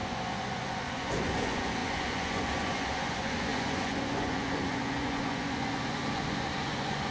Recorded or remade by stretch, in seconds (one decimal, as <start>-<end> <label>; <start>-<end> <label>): 0.0-7.1 remade